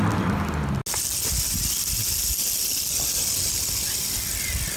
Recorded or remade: recorded